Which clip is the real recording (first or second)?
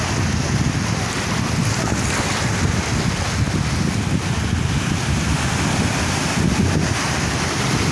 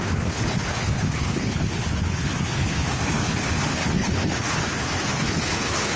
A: first